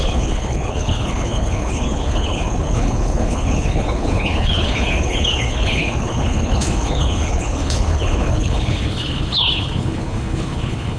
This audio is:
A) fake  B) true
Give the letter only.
A